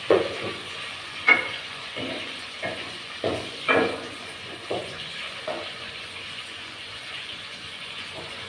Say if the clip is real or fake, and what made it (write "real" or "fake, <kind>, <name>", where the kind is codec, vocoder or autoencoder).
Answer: fake, vocoder, Vocos